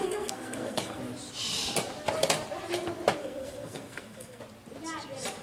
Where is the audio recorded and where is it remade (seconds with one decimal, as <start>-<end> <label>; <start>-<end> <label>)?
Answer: 0.0-1.0 remade; 1.0-3.2 recorded; 3.2-4.4 remade; 4.4-5.4 recorded